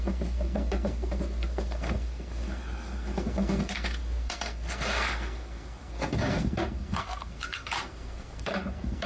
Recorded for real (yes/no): no